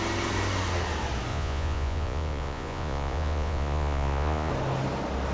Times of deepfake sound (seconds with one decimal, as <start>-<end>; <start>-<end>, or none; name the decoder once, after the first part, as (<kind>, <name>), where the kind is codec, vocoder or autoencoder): 1.3-4.5 (vocoder, Vocos)